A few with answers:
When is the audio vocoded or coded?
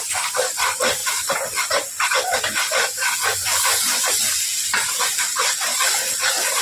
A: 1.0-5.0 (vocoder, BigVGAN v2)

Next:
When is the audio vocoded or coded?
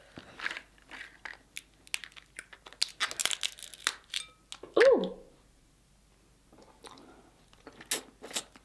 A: none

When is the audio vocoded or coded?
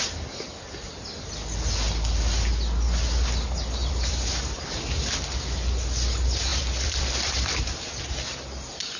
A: 3.8-4.6 (vocoder, BigVGAN v2); 6.5-8.0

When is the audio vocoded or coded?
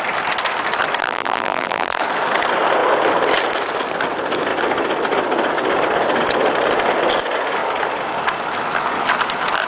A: 1.0-2.0 (vocoder, BigVGAN v2)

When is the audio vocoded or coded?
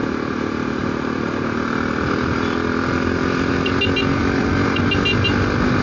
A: 0.0-3.5 (vocoder, BigVGAN v2); 4.2-4.8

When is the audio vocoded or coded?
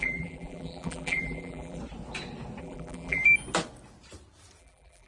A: 0.0-1.8 (vocoder, BigVGAN v2); 2.6-3.2; 4.6-5.1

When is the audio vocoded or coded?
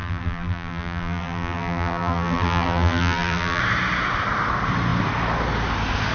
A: 0.0-3.6 (vocoder, BigVGAN v2)